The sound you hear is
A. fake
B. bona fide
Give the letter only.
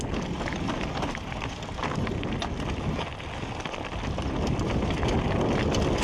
B